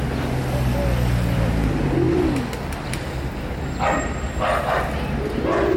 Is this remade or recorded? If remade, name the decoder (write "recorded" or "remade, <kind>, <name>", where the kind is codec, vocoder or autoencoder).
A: recorded